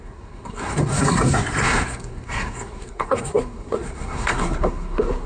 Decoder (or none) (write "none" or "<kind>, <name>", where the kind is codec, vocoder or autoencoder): codec, SNAC